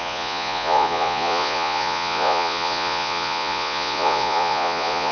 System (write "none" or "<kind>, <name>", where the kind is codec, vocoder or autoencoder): vocoder, Vocos